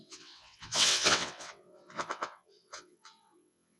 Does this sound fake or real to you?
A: fake